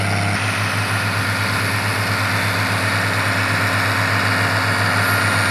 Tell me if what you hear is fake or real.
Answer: real